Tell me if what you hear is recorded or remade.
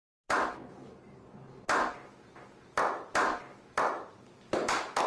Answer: recorded